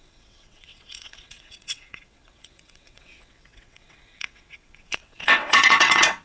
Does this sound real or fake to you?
fake